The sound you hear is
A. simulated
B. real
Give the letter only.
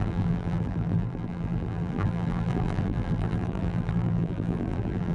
A